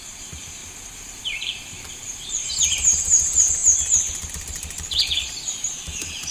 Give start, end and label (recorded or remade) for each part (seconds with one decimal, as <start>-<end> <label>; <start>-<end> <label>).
0.0-0.6 remade; 0.6-1.2 recorded; 1.2-3.6 remade; 3.6-4.3 recorded; 4.3-6.3 remade

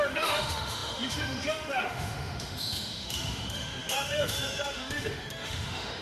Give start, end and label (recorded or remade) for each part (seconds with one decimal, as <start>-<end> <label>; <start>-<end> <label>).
0.0-6.0 remade

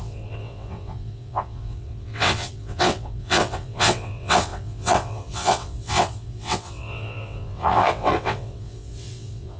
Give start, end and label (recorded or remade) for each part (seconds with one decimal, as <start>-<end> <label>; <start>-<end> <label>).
0.0-9.6 remade

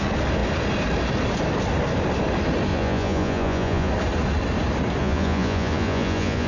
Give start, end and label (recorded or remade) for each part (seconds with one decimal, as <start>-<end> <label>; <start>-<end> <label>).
0.0-2.7 recorded; 2.7-3.9 remade; 3.9-5.0 recorded; 5.0-6.5 remade